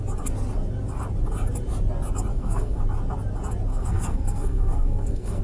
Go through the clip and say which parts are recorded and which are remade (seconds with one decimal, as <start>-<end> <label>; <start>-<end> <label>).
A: 0.0-2.3 recorded; 2.3-2.8 remade; 2.8-3.7 recorded; 3.7-5.4 remade

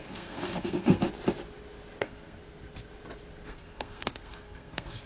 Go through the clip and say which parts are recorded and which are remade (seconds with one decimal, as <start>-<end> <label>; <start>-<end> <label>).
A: 0.0-1.0 remade; 1.0-2.0 recorded; 2.0-2.4 remade; 2.4-3.5 recorded; 3.5-5.1 remade

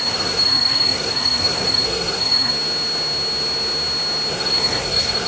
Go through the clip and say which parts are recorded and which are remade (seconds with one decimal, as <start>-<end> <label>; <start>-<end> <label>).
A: 0.0-2.5 remade; 2.5-4.3 recorded; 4.3-5.3 remade